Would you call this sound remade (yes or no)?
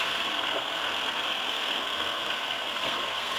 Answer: yes